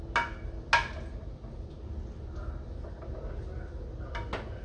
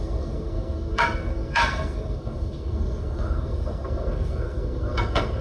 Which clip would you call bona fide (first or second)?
first